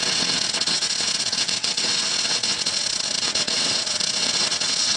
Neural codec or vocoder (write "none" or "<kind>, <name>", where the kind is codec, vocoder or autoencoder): vocoder, WaveNeXt